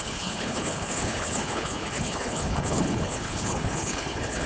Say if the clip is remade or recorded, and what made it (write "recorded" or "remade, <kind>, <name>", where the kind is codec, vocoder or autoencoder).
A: remade, codec, HILCodec